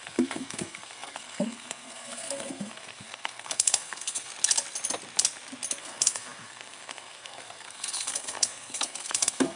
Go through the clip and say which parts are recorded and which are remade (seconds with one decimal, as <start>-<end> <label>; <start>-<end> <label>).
0.0-4.3 remade; 4.3-5.8 recorded; 5.8-9.6 remade